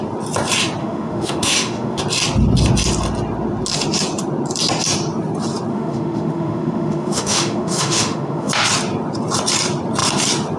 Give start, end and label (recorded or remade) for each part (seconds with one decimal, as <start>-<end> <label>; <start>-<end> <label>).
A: 0.0-0.8 recorded; 0.8-2.0 remade; 2.0-5.7 recorded; 5.7-8.5 remade; 8.5-10.6 recorded